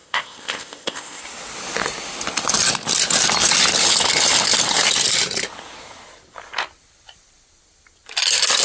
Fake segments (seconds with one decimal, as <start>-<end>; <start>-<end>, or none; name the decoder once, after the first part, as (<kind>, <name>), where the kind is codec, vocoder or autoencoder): 0.0-1.2 (codec, ZipCodec)